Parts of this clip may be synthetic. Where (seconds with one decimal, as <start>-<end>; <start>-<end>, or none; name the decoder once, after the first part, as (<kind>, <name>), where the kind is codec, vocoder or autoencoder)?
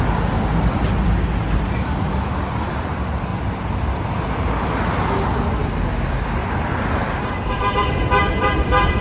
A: 0.0-3.3 (vocoder, BigVGAN v2); 5.6-9.0